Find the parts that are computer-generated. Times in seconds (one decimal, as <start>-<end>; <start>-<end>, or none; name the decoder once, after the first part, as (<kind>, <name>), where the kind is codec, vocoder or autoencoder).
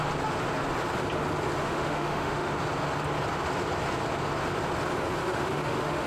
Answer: 1.6-2.5 (autoencoder, DAC-VAE); 5.2-6.1